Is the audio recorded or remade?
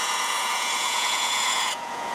remade